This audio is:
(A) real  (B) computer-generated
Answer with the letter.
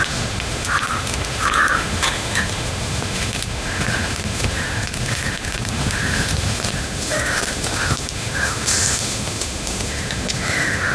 B